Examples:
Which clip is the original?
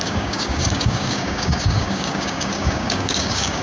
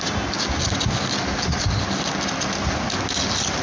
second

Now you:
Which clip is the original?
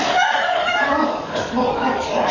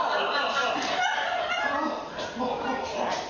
second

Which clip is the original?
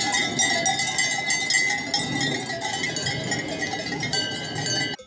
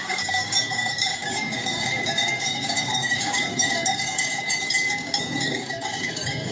first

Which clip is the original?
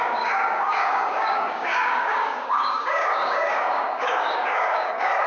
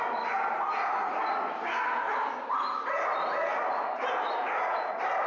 second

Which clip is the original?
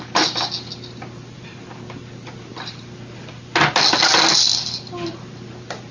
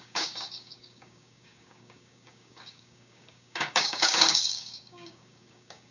first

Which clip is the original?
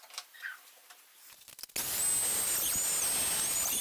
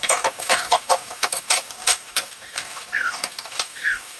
first